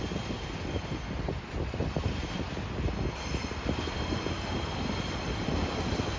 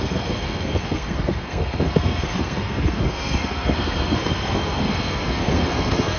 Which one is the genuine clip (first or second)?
first